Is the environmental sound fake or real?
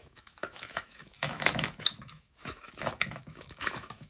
fake